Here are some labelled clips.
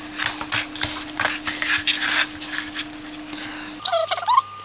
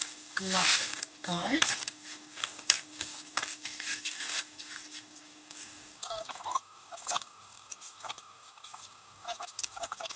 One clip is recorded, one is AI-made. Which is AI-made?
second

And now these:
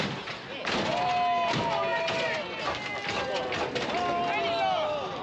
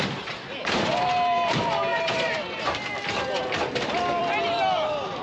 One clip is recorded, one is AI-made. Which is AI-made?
second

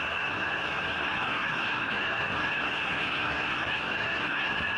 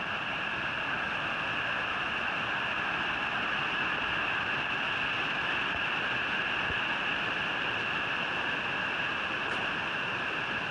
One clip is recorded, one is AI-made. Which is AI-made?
first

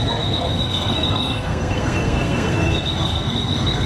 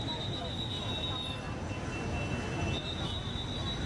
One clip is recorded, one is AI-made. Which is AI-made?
first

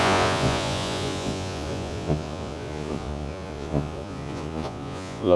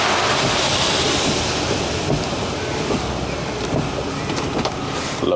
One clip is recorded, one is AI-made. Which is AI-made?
first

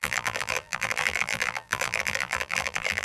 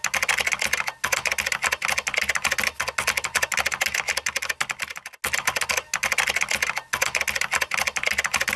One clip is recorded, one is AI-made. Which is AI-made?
first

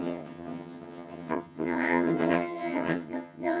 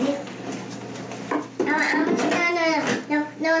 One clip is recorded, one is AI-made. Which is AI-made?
first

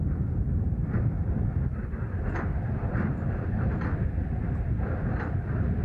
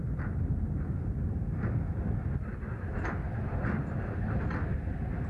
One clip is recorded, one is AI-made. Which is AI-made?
first